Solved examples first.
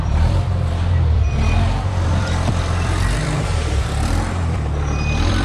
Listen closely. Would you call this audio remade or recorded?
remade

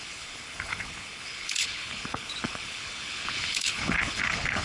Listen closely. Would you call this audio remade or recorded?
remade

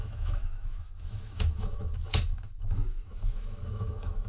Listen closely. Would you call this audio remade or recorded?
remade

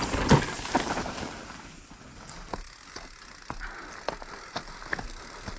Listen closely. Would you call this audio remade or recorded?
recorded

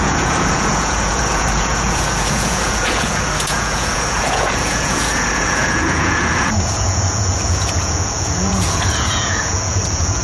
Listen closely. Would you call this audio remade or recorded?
remade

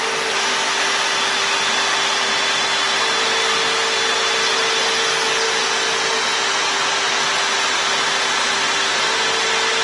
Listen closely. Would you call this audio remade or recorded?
recorded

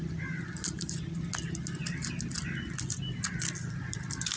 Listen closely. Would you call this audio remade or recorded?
recorded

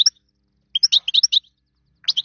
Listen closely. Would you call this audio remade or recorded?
recorded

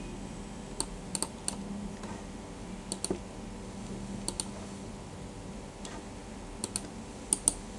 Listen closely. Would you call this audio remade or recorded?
recorded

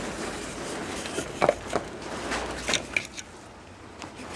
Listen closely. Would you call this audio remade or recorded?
recorded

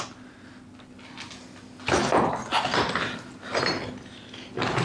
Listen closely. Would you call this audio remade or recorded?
recorded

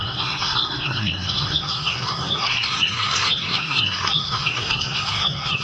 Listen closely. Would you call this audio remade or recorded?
remade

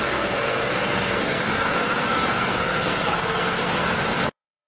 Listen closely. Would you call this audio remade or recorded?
remade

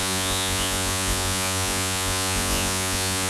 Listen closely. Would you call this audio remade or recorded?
remade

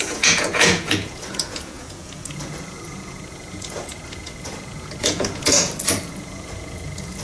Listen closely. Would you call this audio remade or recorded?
remade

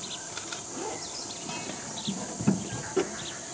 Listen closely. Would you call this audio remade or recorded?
recorded